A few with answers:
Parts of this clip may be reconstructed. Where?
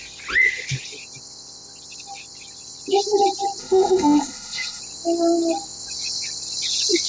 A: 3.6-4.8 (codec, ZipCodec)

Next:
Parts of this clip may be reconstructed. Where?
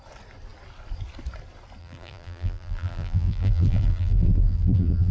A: 1.8-5.1 (vocoder, BigVGAN v2)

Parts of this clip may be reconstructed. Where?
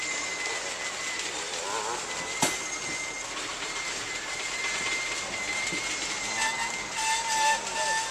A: 3.5-5.8 (vocoder, BigVGAN v2)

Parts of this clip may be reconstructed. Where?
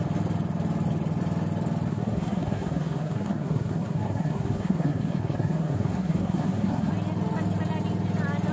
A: 1.9-6.9 (codec, SNAC)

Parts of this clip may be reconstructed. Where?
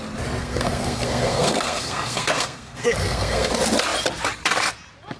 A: 0.4-3.5 (codec, SNAC)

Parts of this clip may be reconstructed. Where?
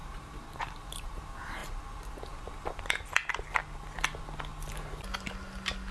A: 0.0-1.2 (vocoder, BigVGAN v2)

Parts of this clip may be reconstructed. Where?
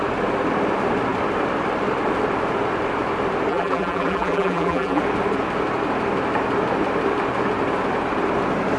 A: 3.5-5.0 (vocoder, BigVGAN v2)